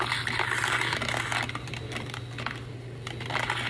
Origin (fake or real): real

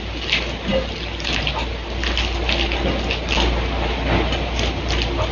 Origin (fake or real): real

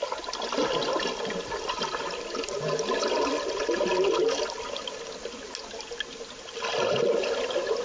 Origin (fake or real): real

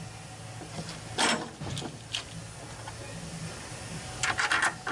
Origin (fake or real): real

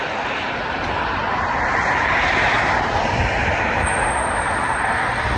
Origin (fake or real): real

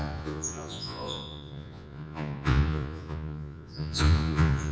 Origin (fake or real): fake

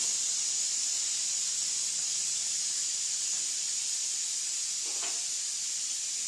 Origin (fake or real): real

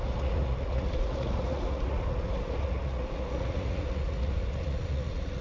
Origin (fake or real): fake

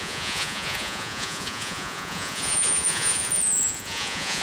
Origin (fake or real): fake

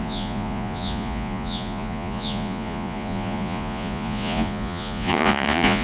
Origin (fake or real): fake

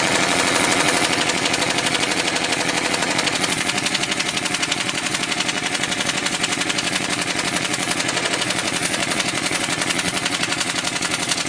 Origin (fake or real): fake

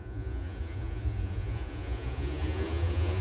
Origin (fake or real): fake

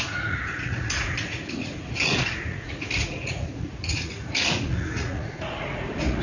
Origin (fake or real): fake